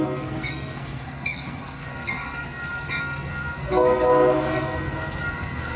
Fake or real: fake